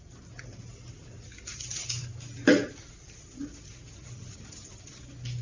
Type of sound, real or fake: real